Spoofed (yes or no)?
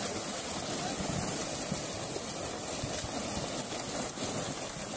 no